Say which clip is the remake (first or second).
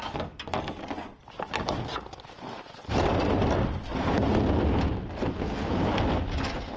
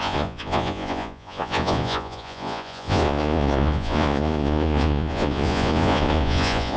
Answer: second